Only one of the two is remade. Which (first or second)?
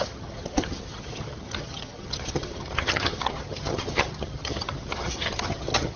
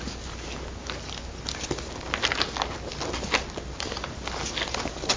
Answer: first